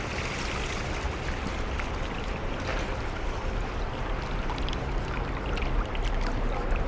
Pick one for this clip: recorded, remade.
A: recorded